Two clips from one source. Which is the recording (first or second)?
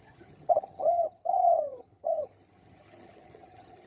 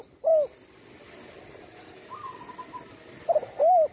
second